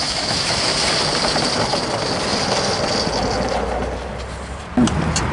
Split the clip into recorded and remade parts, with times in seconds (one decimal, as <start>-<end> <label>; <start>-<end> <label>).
0.0-0.6 remade; 0.6-5.3 recorded